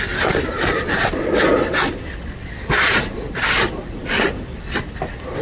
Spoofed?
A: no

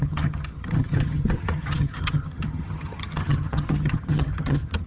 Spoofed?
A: yes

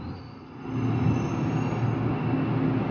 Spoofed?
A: no